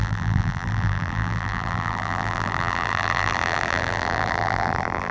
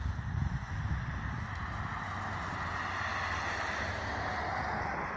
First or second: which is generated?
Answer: first